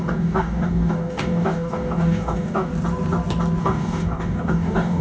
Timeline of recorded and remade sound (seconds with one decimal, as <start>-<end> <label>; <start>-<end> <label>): 0.0-2.7 remade; 2.7-3.6 recorded; 3.6-5.0 remade